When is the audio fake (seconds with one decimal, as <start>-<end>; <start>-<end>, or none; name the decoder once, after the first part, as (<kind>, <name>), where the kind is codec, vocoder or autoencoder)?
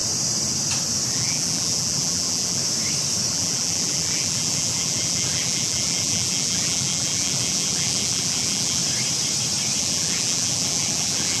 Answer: 1.1-2.6 (vocoder, BigVGAN v2); 3.3-8.8; 9.8-11.4